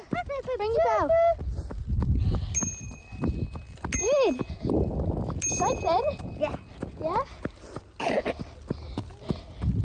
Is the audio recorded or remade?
recorded